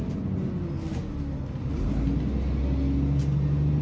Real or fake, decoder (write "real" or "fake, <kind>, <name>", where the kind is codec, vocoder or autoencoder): real